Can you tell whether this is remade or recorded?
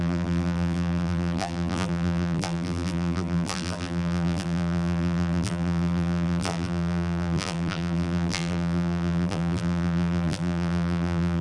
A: remade